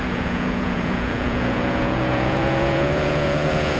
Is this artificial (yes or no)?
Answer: yes